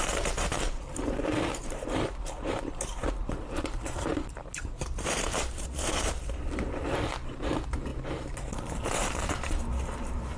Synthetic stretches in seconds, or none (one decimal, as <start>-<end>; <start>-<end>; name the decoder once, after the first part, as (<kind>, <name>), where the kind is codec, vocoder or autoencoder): 0.0-4.1 (vocoder, BigVGAN v2); 4.6-10.4